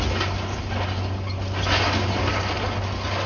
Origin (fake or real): real